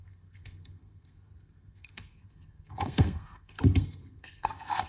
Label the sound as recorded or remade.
remade